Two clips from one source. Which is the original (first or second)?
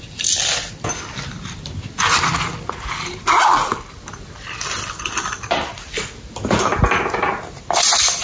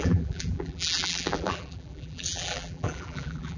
first